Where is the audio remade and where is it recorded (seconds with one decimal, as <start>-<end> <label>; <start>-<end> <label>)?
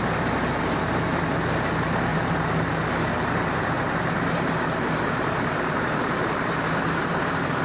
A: 0.0-2.1 recorded; 2.1-6.7 remade; 6.7-7.6 recorded